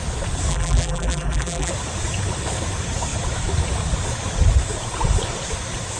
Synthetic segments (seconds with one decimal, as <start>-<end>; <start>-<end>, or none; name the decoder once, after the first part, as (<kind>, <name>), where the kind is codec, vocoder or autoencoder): 0.5-1.7 (vocoder, BigVGAN v2)